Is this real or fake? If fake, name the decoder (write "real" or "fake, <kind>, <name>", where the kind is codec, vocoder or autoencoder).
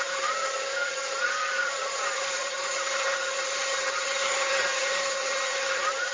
fake, vocoder, HiFi-GAN